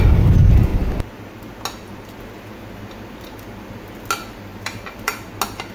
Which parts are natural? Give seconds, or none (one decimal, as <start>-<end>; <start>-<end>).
0.0-4.5; 5.3-5.7